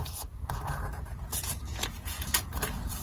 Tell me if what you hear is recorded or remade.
remade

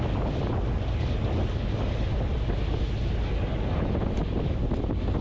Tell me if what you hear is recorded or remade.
recorded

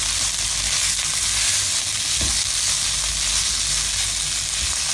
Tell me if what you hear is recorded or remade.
recorded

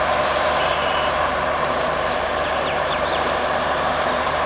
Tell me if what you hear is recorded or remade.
remade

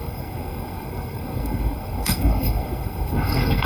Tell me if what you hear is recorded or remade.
remade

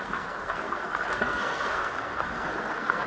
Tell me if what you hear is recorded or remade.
remade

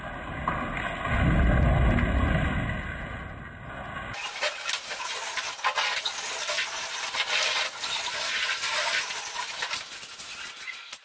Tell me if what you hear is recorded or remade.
recorded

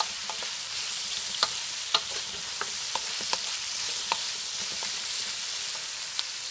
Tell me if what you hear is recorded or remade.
recorded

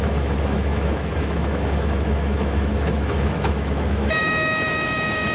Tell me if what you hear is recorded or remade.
remade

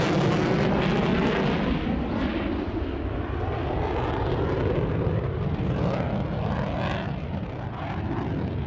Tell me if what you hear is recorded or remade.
recorded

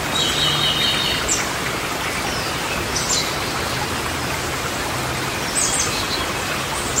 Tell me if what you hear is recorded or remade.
recorded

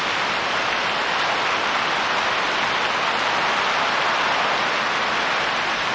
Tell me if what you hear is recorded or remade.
recorded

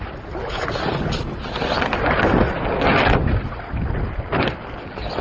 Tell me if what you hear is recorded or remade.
recorded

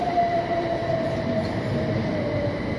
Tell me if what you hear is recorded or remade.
remade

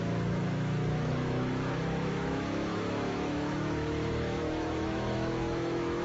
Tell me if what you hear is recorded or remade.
remade